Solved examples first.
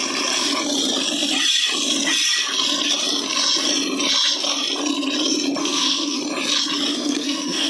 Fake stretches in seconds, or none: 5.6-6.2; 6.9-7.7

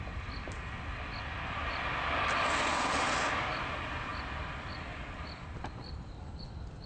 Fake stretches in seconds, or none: 4.1-6.4

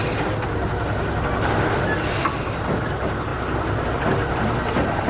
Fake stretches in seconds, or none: 3.3-3.9

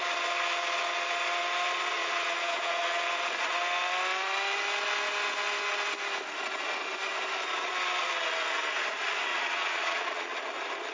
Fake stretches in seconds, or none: 2.0-3.0; 9.3-10.4

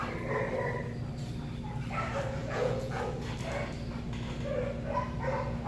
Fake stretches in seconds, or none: 2.4-3.0